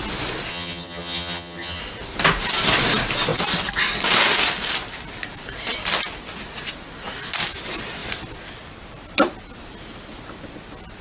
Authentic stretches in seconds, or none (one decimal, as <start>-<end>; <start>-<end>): 0.0-0.5; 1.8-11.0